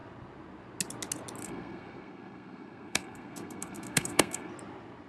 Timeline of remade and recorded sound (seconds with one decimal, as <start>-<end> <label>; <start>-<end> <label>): 0.0-1.4 recorded; 1.4-4.5 remade; 4.5-5.1 recorded